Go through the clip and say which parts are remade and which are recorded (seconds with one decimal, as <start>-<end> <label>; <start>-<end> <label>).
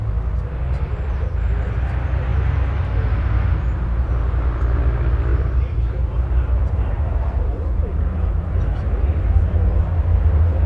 0.0-5.3 recorded; 5.3-7.5 remade; 7.5-10.7 recorded